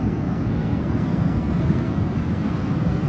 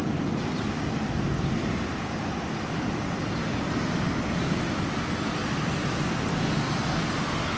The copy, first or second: first